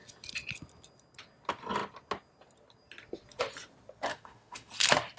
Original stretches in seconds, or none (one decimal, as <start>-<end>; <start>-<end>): 0.0-4.1; 4.7-5.2